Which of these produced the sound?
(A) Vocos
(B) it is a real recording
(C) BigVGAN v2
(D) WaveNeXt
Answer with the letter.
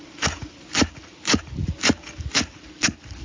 B